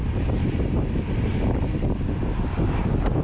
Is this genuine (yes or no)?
yes